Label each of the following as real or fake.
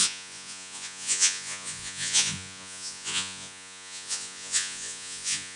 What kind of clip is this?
fake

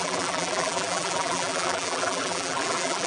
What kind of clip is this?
fake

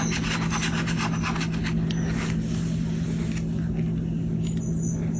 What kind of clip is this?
real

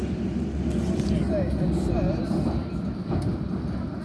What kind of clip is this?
real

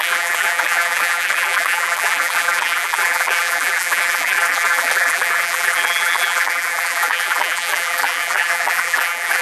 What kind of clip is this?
fake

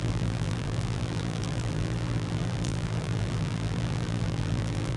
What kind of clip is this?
fake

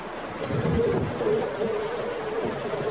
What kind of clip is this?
real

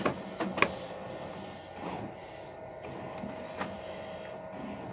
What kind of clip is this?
real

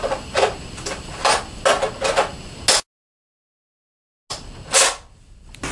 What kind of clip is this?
real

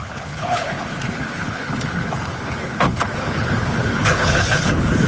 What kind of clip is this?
fake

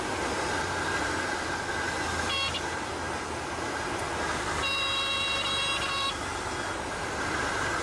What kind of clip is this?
real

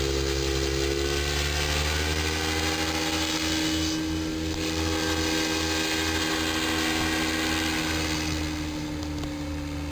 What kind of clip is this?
real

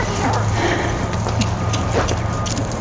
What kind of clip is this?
real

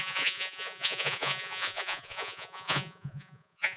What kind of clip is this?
fake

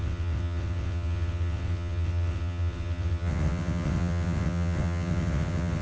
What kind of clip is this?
fake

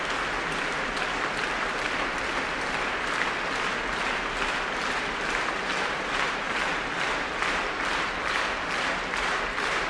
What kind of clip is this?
real